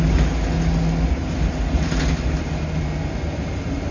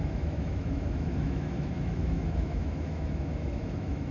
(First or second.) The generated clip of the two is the second